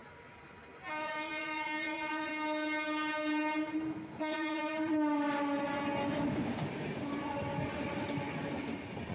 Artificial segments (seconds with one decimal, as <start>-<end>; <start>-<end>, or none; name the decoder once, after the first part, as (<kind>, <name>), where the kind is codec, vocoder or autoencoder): 0.9-2.3 (vocoder, Vocos); 4.2-4.9